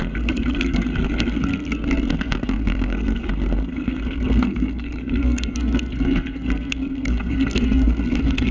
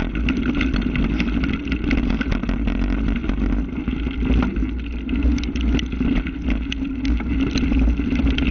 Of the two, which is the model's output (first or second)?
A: first